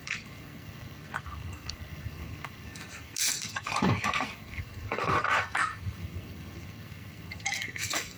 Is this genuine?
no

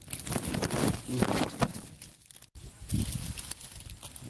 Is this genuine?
yes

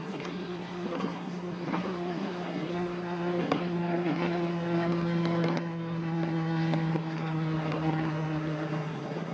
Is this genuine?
no